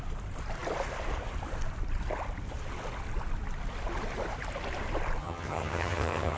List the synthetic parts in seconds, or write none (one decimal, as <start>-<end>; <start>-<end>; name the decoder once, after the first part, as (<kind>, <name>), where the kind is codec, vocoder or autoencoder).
5.2-6.4 (vocoder, HiFi-GAN)